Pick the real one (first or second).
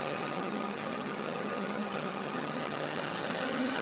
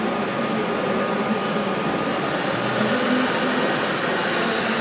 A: second